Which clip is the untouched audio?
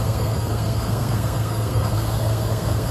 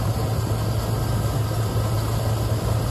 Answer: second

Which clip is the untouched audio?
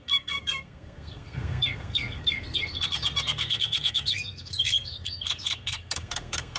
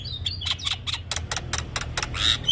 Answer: second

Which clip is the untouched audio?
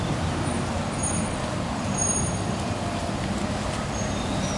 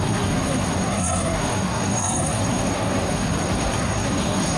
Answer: first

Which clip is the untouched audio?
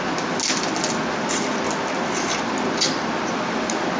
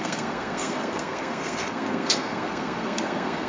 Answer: first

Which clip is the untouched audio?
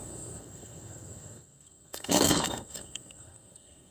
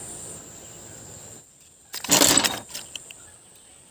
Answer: second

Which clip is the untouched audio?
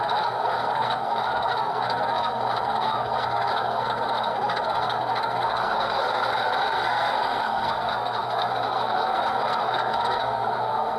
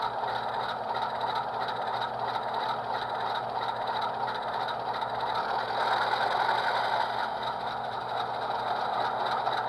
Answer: second